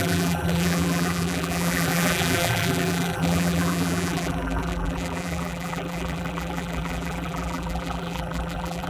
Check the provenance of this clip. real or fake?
fake